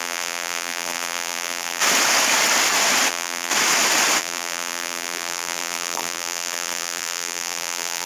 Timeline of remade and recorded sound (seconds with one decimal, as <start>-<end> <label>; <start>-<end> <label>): 0.0-1.8 remade; 1.8-3.1 recorded; 3.1-3.5 remade; 3.5-4.2 recorded; 4.2-8.1 remade